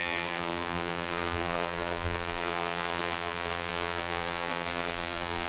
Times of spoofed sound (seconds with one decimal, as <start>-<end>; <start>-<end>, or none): 0.0-5.5